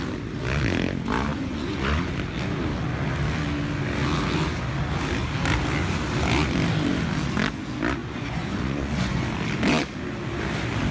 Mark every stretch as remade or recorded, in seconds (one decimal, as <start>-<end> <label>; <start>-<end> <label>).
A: 0.0-1.3 recorded; 1.3-2.1 remade; 2.1-8.0 recorded; 8.0-9.2 remade; 9.2-10.9 recorded